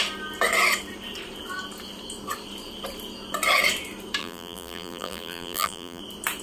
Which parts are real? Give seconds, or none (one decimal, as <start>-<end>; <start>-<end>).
0.0-4.2; 6.0-6.4